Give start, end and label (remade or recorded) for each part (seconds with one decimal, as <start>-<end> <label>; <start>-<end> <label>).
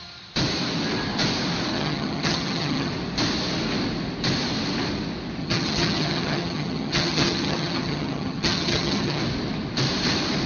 0.0-1.7 recorded; 1.7-2.9 remade; 2.9-5.4 recorded; 5.4-9.2 remade; 9.2-10.5 recorded